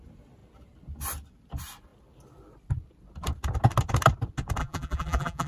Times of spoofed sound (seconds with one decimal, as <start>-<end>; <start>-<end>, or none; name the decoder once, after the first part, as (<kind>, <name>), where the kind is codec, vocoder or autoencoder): 4.6-5.5 (vocoder, BigVGAN v2)